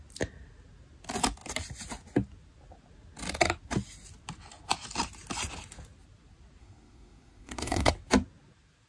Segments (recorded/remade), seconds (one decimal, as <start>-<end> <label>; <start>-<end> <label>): 0.0-6.6 recorded; 6.6-7.9 remade; 7.9-8.9 recorded